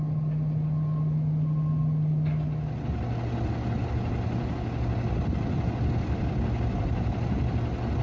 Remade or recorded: recorded